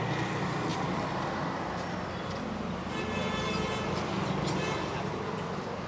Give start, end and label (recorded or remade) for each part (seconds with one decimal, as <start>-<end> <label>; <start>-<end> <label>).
0.0-5.9 recorded

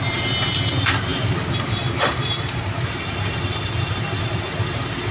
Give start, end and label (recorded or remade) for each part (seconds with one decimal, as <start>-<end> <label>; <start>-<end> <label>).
0.0-1.1 recorded; 1.1-4.2 remade; 4.2-5.1 recorded